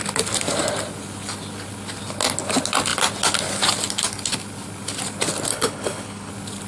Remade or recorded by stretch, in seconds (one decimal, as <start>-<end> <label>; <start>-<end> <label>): 0.0-5.5 recorded; 5.5-6.3 remade; 6.3-6.7 recorded